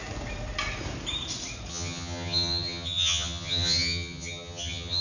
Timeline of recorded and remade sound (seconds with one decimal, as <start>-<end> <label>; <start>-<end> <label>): 0.0-1.7 recorded; 1.7-5.0 remade